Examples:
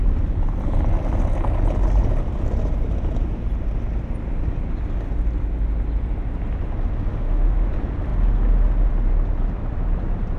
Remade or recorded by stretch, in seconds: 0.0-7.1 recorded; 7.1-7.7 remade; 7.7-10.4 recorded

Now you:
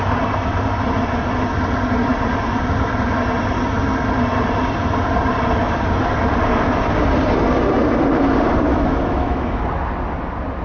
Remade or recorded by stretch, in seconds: 0.0-8.7 recorded; 8.7-9.6 remade; 9.6-10.6 recorded

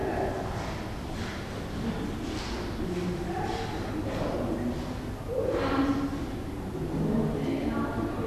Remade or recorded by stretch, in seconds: 0.0-8.3 recorded

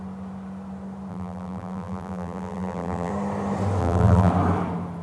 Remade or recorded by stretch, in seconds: 0.0-1.1 recorded; 1.1-3.1 remade; 3.1-3.8 recorded; 3.8-4.3 remade; 4.3-5.0 recorded

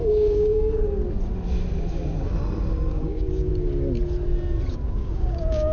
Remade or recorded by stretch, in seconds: 0.0-0.6 remade; 0.6-2.9 recorded; 2.9-3.5 remade; 3.5-4.7 recorded; 4.7-5.7 remade

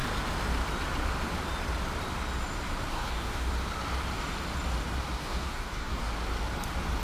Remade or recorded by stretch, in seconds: 0.0-2.9 recorded; 2.9-3.5 remade; 3.5-5.2 recorded; 5.2-6.1 remade; 6.1-7.0 recorded

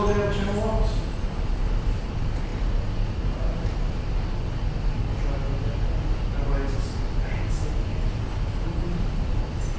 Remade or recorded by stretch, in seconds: 0.0-9.8 recorded

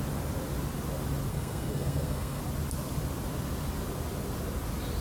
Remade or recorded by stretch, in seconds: 0.0-1.3 recorded; 1.3-2.4 remade; 2.4-5.0 recorded